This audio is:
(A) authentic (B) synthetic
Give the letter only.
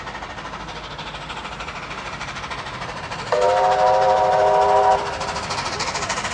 A